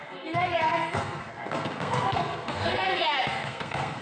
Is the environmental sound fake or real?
fake